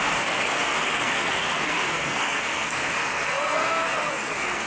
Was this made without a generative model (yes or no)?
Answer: no